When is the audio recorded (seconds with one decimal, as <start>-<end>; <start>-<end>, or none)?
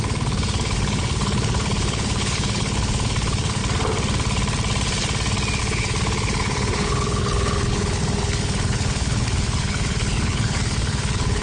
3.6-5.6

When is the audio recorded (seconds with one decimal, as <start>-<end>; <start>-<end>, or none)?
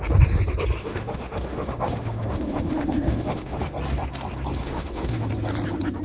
0.0-0.8; 3.6-4.6; 5.3-6.0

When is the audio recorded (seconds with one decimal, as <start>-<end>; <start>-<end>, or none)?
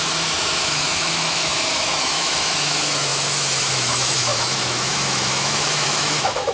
none